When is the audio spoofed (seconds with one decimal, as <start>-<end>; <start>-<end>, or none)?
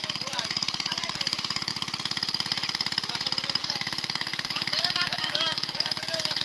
0.0-1.7; 3.6-6.4